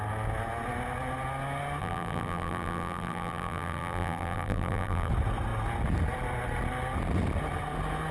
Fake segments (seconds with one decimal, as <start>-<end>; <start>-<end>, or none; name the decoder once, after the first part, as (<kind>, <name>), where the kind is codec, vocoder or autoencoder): 1.8-5.1 (vocoder, BigVGAN v2)